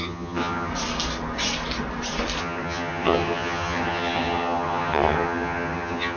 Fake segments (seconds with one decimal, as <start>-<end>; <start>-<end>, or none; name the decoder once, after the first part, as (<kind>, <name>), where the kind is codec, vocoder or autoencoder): 0.0-0.7 (vocoder, HiFi-GAN); 2.4-6.2